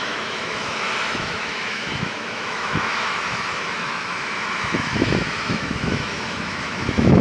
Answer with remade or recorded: remade